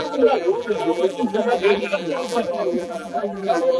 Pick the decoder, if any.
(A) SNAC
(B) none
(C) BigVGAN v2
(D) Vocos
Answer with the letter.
C